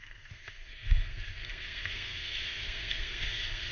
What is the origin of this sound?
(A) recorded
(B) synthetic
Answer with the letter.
B